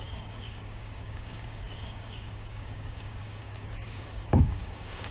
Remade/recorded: remade